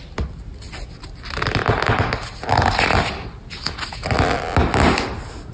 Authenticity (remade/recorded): recorded